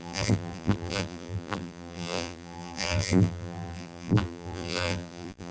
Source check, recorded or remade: remade